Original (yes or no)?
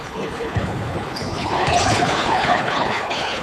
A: no